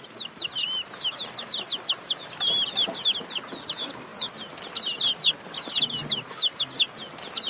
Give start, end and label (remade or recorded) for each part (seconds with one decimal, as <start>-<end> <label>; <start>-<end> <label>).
0.0-7.5 recorded